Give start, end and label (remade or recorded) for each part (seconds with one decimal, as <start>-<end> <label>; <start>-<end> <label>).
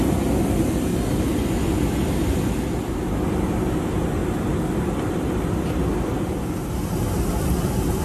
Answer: 0.0-8.0 recorded